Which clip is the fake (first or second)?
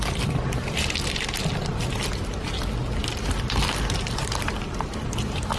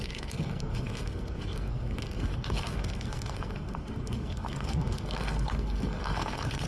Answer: second